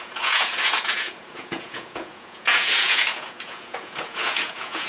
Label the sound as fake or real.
fake